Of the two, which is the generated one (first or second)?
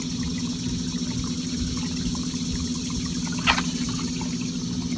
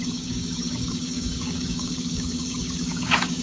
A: second